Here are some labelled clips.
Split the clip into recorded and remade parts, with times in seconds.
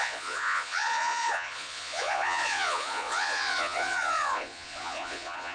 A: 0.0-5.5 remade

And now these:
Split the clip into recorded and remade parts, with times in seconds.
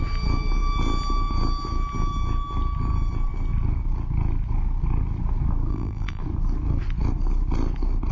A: 0.0-5.7 recorded; 5.7-6.2 remade; 6.2-8.1 recorded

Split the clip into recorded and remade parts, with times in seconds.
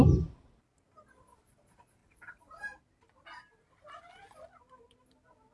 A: 0.0-2.0 recorded; 2.0-2.8 remade; 2.8-5.5 recorded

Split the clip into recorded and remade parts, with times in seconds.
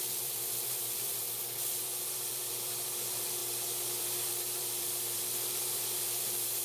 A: 0.0-3.4 remade; 3.4-4.0 recorded; 4.0-6.6 remade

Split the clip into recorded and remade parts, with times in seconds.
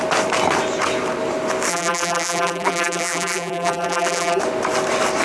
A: 0.0-1.7 recorded; 1.7-4.4 remade; 4.4-5.2 recorded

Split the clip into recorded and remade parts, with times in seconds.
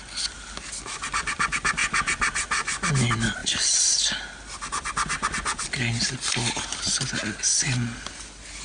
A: 0.0-8.6 recorded